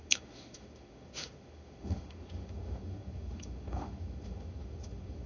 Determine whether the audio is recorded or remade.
remade